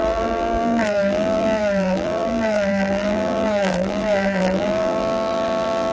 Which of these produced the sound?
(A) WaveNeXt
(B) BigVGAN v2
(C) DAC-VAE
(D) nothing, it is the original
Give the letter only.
B